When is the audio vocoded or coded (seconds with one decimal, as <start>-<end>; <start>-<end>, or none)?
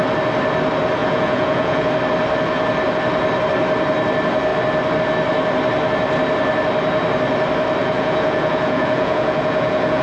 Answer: 1.0-1.9; 7.8-10.0